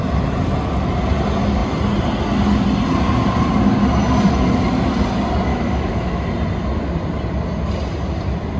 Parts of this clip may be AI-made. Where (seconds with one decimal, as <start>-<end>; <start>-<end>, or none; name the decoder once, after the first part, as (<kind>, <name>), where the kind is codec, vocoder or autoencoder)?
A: 5.5-6.2 (autoencoder, DAC-VAE)